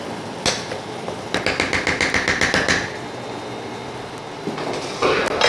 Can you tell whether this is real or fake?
real